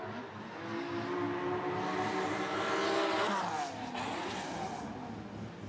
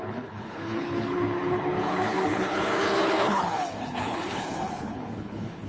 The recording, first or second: first